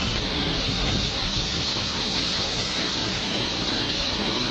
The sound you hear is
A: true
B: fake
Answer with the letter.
B